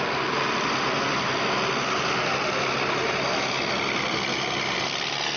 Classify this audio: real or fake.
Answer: real